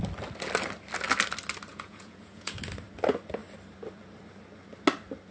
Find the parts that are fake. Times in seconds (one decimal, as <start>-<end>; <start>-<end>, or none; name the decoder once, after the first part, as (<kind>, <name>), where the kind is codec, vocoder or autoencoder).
1.7-2.6 (vocoder, Vocos)